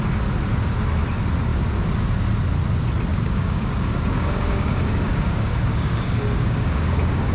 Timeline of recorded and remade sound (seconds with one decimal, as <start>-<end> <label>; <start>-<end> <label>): 0.0-3.1 recorded; 3.1-7.3 remade